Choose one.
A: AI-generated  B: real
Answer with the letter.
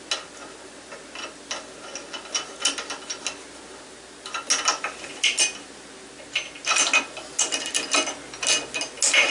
B